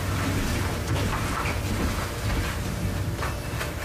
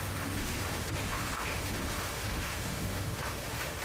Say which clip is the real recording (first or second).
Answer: first